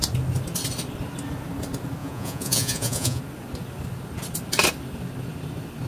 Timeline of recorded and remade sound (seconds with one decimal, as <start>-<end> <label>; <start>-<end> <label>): 0.0-2.0 recorded; 2.0-3.2 remade; 3.2-5.9 recorded